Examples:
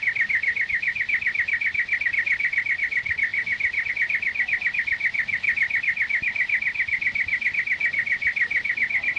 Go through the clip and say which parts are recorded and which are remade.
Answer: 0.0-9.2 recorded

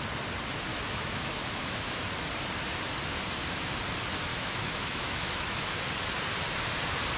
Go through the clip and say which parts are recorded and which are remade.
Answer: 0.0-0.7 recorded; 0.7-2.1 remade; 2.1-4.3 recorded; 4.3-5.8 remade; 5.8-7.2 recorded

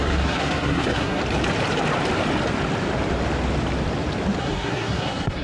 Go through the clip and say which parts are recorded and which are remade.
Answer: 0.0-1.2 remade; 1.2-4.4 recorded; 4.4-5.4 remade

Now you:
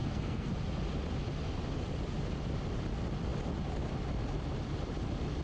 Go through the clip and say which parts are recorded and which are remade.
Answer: 0.0-0.5 remade; 0.5-5.4 recorded

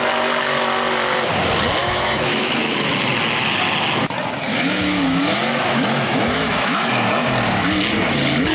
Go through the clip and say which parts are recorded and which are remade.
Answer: 0.0-1.8 recorded; 1.8-2.9 remade; 2.9-4.5 recorded; 4.5-6.9 remade; 6.9-8.5 recorded

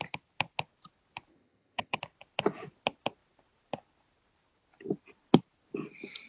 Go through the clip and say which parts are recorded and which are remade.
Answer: 0.0-1.3 recorded; 1.3-2.0 remade; 2.0-6.3 recorded